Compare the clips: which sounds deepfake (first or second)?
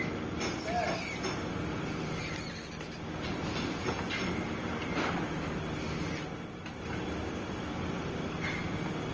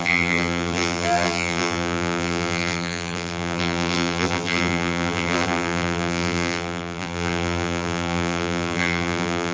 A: second